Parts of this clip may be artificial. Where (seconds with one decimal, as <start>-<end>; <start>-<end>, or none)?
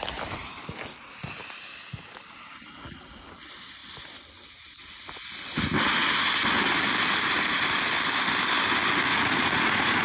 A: 9.1-10.0